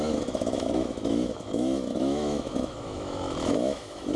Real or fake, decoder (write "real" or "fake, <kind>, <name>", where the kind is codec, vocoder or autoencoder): fake, autoencoder, DAC-VAE